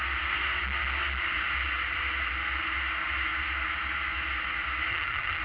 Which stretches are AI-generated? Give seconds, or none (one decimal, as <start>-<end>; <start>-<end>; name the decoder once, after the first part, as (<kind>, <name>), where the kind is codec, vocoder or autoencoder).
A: 4.9-5.4 (vocoder, HiFi-GAN)